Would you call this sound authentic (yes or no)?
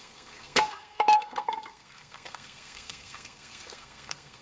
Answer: no